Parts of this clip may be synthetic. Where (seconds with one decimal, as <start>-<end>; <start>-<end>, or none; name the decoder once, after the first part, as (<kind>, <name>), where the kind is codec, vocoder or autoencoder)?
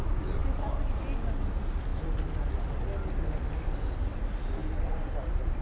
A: 4.6-5.1 (vocoder, BigVGAN v2)